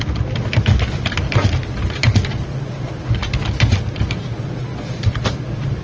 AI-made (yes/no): no